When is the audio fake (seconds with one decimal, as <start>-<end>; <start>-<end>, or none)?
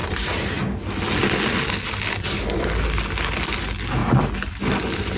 none